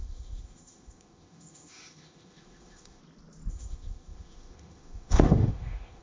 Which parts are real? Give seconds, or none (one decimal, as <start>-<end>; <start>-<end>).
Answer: 3.0-3.5